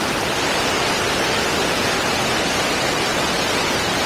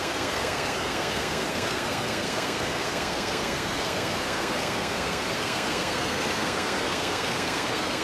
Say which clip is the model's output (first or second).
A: second